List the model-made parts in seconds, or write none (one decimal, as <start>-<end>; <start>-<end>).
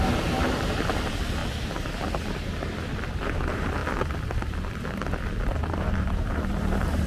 0.0-1.4; 2.1-3.8; 5.6-7.1